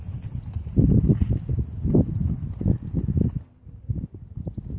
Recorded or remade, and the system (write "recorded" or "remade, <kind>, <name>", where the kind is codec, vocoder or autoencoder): recorded